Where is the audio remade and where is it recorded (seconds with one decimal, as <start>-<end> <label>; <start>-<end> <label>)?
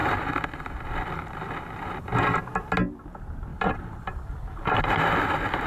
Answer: 0.0-2.4 remade; 2.4-3.5 recorded; 3.5-4.8 remade; 4.8-5.7 recorded